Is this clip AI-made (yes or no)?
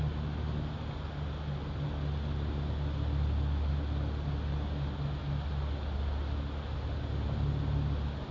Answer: no